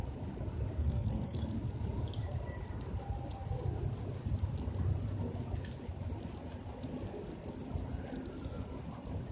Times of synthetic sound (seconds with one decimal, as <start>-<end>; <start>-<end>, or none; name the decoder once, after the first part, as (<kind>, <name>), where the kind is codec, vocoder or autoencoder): 0.8-1.4 (codec, SNAC)